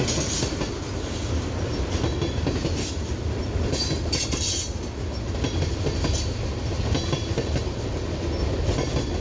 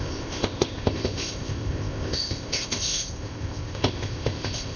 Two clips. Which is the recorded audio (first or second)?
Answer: first